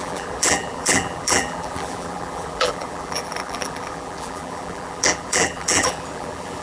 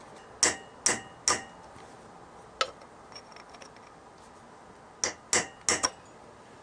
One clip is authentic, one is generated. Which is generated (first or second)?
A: first